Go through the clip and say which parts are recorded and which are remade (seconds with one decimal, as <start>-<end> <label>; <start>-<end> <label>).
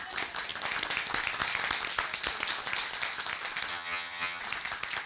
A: 0.0-3.7 recorded; 3.7-4.4 remade; 4.4-5.1 recorded